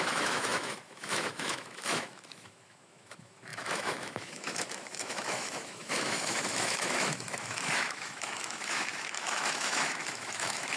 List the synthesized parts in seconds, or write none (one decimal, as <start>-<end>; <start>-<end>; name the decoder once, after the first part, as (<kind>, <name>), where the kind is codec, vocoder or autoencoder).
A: 0.0-10.8 (autoencoder, DAC-VAE)